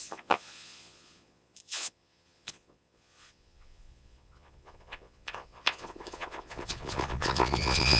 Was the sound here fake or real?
fake